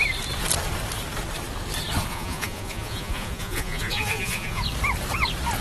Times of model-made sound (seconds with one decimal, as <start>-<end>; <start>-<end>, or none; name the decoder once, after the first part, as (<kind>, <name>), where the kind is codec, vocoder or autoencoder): 2.1-4.6 (vocoder, Vocos)